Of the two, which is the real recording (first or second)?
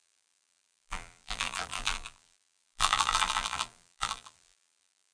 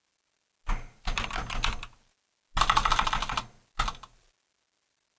second